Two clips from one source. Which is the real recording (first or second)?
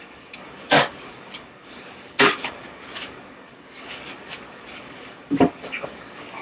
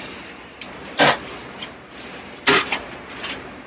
second